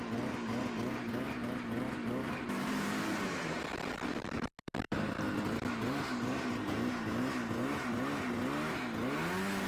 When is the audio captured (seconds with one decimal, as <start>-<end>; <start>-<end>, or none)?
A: 0.0-2.2; 3.6-4.1; 7.9-9.7